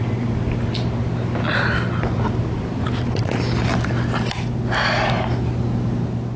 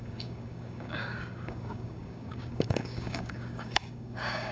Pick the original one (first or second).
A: first